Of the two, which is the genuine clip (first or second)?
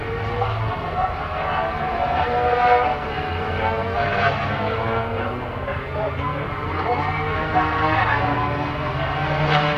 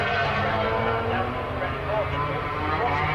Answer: second